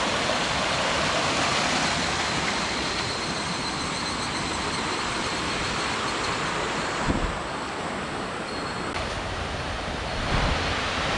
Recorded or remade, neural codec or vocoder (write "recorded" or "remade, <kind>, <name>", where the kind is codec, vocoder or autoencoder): recorded